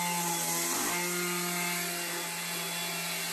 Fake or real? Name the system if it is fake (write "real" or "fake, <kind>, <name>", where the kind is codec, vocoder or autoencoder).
real